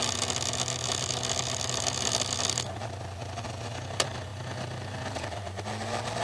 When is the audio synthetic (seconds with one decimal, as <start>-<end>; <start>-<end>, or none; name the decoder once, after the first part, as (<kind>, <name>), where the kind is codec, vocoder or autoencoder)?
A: none